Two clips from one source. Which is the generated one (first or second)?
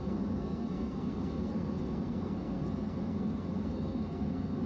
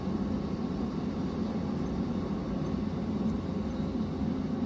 first